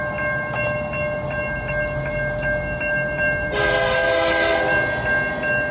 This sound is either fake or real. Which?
real